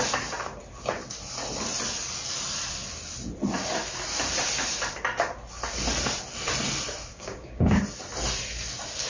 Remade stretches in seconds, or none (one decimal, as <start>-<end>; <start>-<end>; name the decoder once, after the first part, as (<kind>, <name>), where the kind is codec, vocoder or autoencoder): 7.1-7.8 (codec, DAC)